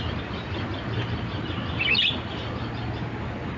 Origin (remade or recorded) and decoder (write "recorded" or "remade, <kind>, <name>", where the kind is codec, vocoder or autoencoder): recorded